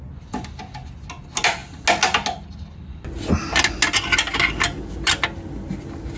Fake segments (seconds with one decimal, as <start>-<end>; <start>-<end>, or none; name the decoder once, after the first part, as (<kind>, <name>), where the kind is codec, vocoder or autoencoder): none